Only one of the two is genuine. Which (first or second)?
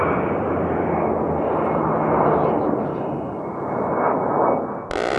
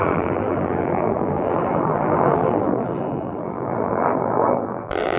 first